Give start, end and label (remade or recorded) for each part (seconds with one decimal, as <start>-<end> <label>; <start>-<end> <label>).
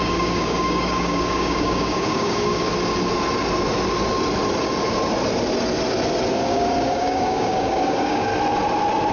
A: 0.0-2.7 remade; 2.7-6.3 recorded; 6.3-8.3 remade; 8.3-9.1 recorded